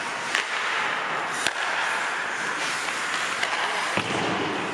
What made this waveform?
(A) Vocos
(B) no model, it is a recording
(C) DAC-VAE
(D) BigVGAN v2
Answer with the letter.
D